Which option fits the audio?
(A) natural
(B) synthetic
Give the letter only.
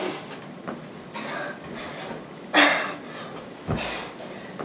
A